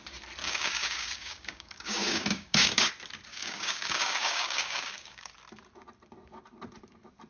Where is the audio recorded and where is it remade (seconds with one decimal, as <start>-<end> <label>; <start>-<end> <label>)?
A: 0.0-0.4 recorded; 0.4-2.9 remade; 2.9-3.3 recorded; 3.3-5.3 remade; 5.3-7.3 recorded